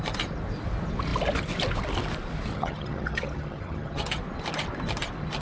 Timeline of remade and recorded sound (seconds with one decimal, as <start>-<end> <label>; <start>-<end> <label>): 0.0-2.5 recorded; 2.5-4.2 remade; 4.2-5.4 recorded